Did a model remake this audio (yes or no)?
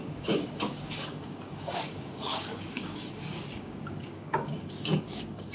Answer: yes